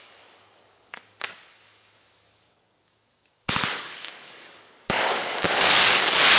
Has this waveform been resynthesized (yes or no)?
yes